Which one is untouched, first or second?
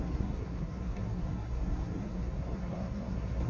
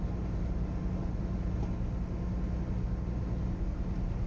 second